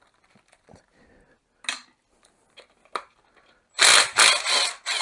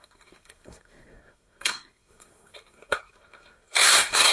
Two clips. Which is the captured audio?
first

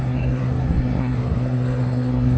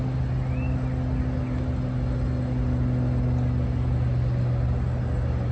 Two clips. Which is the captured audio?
second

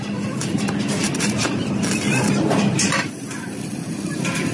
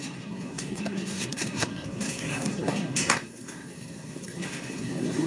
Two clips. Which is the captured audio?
first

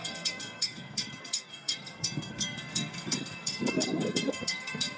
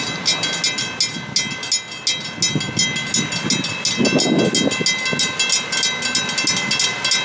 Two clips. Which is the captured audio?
second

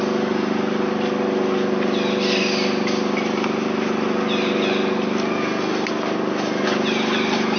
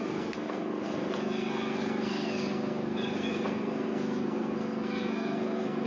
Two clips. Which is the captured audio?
first